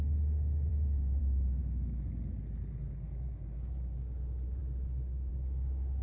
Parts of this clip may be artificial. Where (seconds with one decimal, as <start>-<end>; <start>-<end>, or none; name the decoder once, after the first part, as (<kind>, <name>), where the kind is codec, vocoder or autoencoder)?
0.7-1.2 (codec, DAC)